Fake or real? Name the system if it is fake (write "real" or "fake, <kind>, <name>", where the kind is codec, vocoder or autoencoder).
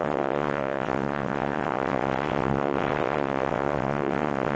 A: fake, vocoder, WaveNeXt